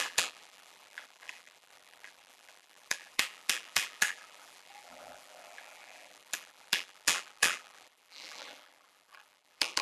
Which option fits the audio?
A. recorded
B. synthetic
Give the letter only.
B